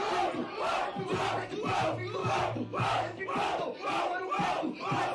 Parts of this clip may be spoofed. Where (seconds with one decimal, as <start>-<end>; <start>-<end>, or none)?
2.2-4.0